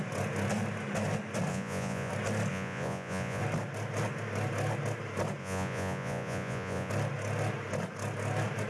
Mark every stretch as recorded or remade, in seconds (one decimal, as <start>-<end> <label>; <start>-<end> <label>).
0.0-1.5 recorded; 1.5-2.1 remade; 2.1-2.5 recorded; 2.5-3.4 remade; 3.4-5.4 recorded; 5.4-6.9 remade; 6.9-8.7 recorded